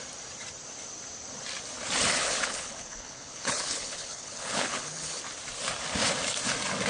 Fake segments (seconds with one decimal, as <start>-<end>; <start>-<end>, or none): 2.2-5.2